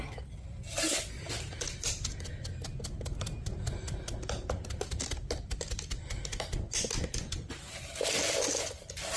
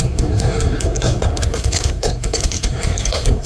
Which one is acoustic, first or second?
first